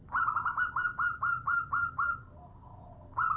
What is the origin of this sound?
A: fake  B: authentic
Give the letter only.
B